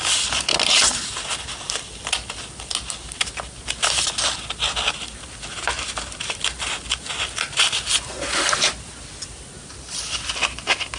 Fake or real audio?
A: real